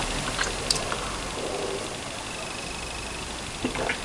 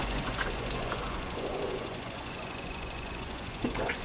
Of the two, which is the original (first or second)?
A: first